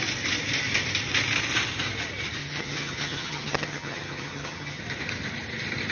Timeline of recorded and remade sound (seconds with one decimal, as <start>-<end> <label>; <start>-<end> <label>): 0.0-2.4 recorded; 2.4-4.8 remade; 4.8-5.9 recorded